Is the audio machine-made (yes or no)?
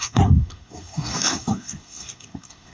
yes